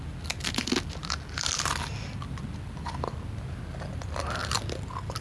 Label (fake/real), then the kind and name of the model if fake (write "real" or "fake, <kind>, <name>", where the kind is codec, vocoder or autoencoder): fake, vocoder, BigVGAN v2